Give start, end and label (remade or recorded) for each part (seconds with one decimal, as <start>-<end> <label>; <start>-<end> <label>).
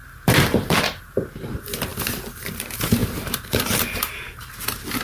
0.0-1.0 remade; 1.0-3.0 recorded; 3.0-4.5 remade; 4.5-5.0 recorded